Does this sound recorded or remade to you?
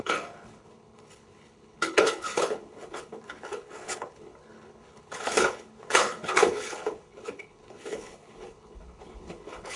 remade